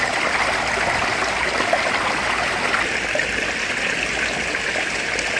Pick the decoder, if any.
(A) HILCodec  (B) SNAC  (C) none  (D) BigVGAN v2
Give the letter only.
C